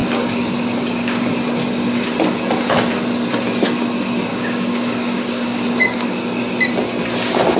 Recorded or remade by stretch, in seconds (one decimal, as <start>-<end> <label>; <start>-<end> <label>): 0.0-1.3 remade; 1.3-4.3 recorded; 4.3-6.5 remade; 6.5-7.6 recorded